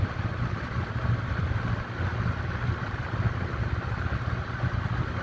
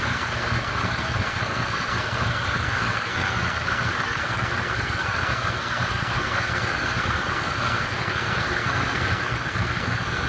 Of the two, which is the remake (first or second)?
second